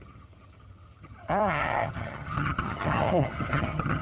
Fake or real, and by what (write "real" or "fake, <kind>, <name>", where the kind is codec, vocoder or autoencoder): fake, vocoder, HiFi-GAN